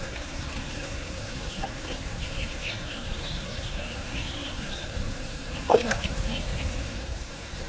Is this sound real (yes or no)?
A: no